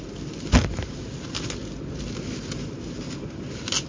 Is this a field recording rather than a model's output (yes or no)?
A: yes